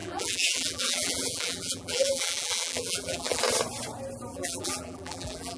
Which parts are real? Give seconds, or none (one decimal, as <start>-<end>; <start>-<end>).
3.4-4.3

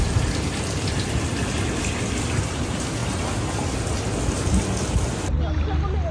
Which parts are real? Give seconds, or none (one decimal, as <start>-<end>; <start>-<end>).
0.0-6.1

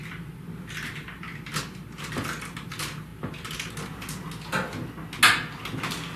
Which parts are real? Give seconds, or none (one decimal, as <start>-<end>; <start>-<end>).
0.0-6.2